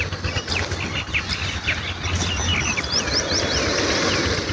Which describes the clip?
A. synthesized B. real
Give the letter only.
B